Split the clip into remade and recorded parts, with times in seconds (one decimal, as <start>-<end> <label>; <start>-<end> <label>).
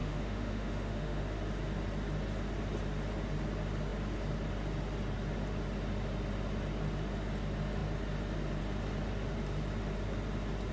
0.0-1.2 remade; 1.2-10.7 recorded